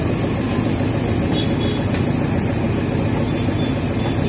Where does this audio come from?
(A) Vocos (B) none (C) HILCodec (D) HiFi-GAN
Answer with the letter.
B